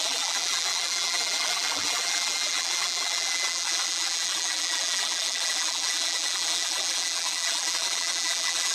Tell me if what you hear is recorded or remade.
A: remade